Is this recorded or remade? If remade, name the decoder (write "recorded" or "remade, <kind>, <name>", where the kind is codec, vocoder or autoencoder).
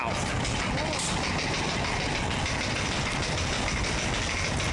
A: recorded